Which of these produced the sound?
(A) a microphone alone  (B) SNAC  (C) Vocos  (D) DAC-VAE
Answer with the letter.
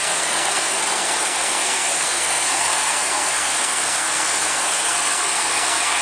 B